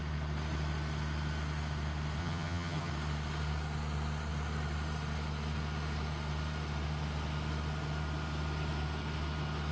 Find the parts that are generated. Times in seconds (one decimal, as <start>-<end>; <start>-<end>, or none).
2.2-2.9

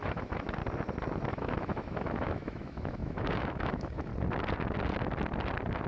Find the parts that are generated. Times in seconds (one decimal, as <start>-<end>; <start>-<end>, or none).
0.0-0.6; 1.3-4.1

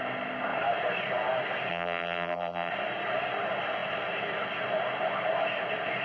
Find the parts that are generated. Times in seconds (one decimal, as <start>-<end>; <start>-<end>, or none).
1.7-2.7

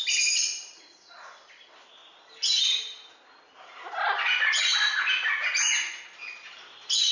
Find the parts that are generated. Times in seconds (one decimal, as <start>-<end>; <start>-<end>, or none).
none